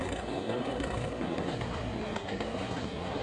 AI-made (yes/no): yes